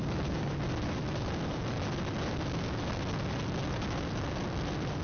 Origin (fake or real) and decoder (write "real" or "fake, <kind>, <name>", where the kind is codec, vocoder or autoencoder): real